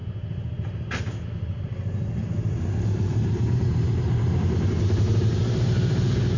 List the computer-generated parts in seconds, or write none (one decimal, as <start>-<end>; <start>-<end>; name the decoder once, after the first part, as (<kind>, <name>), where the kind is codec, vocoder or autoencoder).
2.2-6.0 (vocoder, BigVGAN v2)